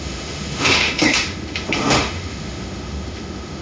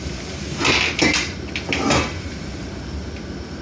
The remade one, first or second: first